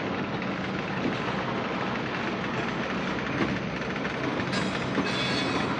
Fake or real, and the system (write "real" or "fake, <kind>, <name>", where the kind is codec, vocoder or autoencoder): real